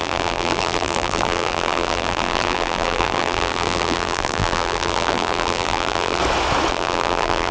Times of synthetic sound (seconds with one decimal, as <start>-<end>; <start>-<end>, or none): 0.0-6.2; 6.7-7.5